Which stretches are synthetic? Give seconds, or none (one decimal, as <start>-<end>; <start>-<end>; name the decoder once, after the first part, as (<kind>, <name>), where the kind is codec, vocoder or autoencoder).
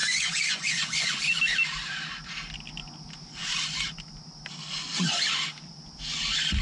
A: 0.0-1.4 (vocoder, Vocos)